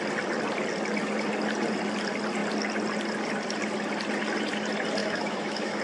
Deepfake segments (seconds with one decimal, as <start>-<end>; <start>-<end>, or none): 5.0-5.8